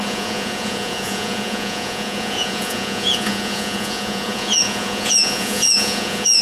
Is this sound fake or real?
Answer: fake